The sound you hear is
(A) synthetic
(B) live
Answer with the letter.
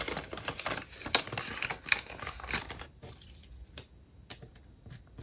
B